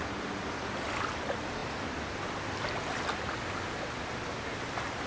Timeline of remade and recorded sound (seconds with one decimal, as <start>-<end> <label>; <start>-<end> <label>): 0.0-5.1 recorded